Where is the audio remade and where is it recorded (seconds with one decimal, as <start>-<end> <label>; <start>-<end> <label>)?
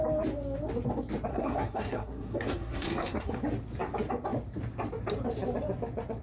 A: 0.0-1.3 recorded; 1.3-3.4 remade; 3.4-6.2 recorded